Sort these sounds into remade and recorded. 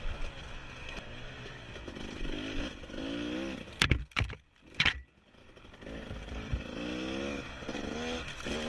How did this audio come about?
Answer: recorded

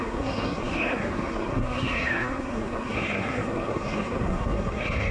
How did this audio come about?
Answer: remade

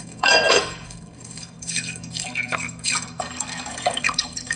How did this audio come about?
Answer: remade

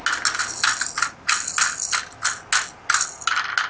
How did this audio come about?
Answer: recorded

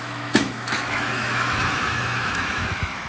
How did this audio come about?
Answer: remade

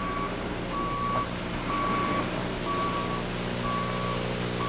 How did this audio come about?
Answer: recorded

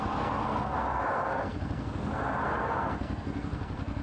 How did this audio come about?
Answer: remade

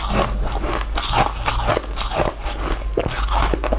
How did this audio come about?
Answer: recorded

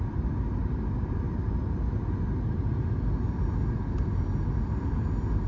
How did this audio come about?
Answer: recorded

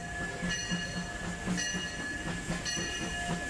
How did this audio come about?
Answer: recorded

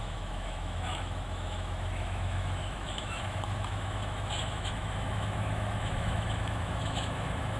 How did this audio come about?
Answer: remade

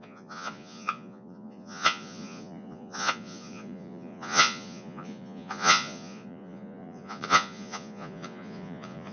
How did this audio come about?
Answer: remade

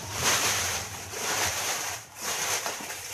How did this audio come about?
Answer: remade